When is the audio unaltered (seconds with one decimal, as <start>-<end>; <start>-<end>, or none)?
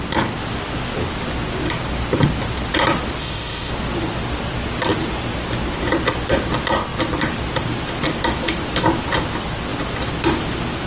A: 0.0-3.2; 3.7-10.9